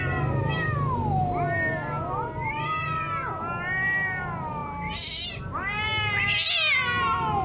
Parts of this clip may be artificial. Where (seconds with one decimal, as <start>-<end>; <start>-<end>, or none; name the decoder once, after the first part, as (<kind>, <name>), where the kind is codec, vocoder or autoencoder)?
none